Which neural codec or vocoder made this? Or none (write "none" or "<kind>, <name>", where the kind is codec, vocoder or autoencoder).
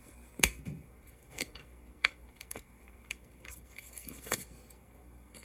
codec, SNAC